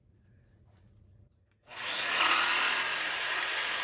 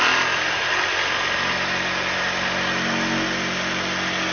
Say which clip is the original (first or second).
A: second